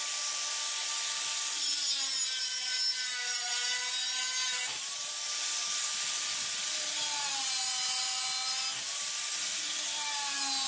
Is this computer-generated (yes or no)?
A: no